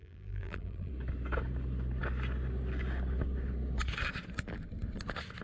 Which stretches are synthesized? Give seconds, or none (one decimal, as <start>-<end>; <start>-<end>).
0.0-0.9